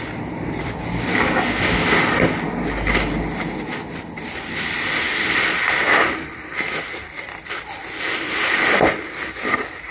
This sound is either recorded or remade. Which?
recorded